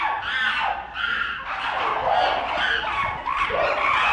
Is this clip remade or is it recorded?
recorded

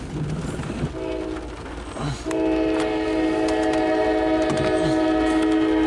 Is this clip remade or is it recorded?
recorded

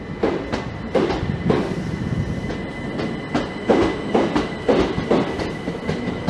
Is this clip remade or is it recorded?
recorded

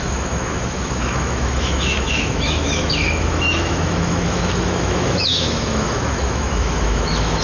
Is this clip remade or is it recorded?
remade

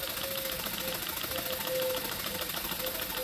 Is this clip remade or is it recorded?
recorded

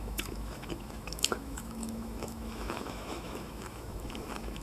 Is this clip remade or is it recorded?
remade